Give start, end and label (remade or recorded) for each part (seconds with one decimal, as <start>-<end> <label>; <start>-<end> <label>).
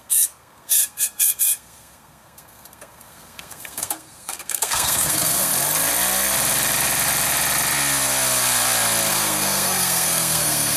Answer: 0.0-5.5 remade; 5.5-9.1 recorded; 9.1-10.8 remade